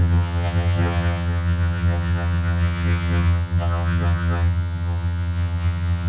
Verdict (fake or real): fake